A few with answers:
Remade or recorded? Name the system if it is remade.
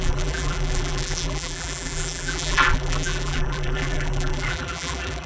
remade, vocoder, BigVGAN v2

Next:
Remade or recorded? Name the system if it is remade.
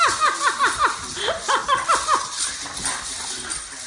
recorded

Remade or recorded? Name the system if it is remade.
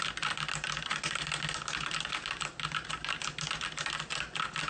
recorded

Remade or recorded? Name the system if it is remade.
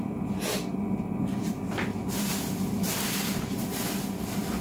remade, vocoder, BigVGAN v2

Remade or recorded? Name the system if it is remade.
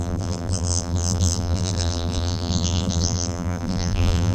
remade, vocoder, BigVGAN v2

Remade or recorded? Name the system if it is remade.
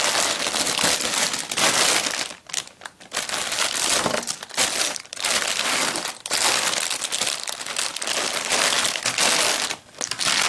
recorded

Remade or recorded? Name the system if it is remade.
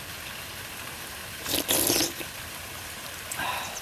recorded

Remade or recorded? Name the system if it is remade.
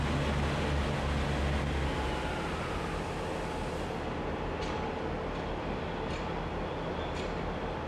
recorded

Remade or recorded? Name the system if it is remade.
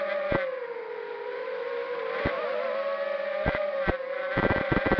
remade, vocoder, BigVGAN v2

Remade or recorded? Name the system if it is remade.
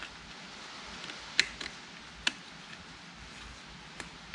recorded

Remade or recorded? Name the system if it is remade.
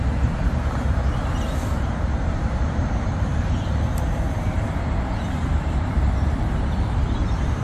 remade, vocoder, BigVGAN v2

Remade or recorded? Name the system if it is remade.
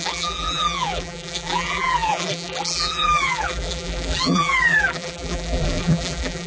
remade, vocoder, BigVGAN v2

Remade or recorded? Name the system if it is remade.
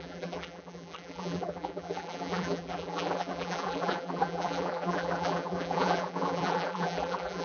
remade, vocoder, BigVGAN v2